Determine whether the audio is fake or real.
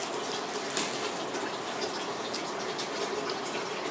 real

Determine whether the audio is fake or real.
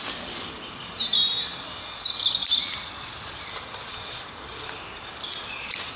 real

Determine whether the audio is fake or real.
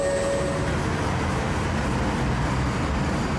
real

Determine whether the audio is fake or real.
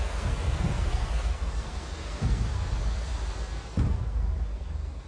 fake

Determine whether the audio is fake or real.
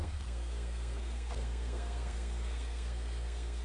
fake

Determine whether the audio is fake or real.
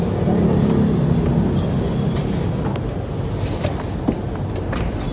real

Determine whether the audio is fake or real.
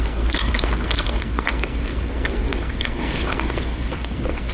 fake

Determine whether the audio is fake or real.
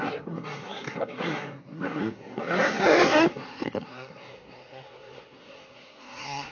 fake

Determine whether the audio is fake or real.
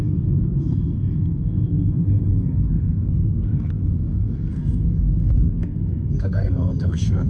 fake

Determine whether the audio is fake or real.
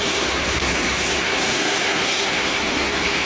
fake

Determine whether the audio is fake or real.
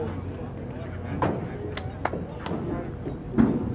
real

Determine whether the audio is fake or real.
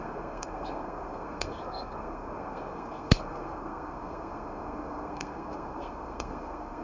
fake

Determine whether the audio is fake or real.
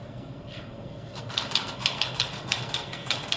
fake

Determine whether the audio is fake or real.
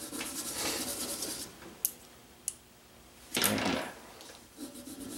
real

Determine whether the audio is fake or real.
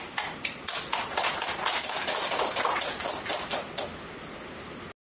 real